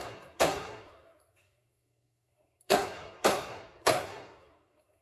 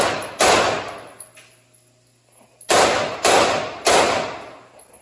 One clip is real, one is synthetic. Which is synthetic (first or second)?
first